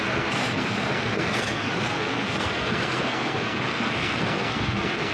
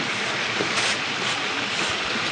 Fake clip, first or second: first